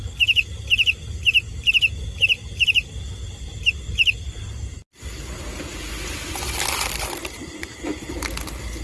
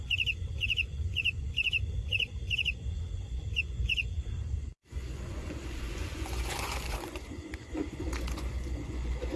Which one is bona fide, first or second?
first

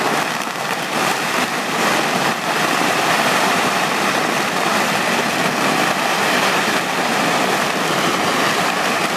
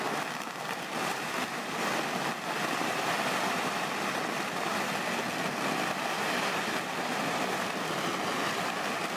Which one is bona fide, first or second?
second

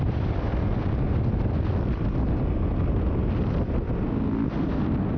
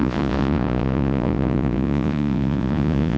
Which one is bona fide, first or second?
first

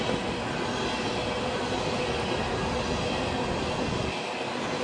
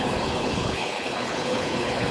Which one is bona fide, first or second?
first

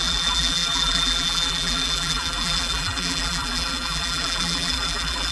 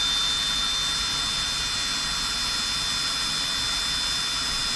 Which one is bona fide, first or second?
second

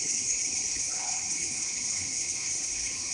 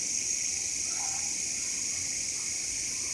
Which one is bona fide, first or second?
second